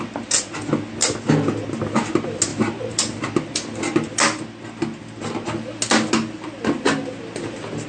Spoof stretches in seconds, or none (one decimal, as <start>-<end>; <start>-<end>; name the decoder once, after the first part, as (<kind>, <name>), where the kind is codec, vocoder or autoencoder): none